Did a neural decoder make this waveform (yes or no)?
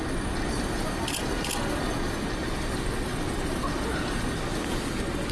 no